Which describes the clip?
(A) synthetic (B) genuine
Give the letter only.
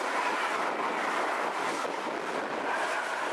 B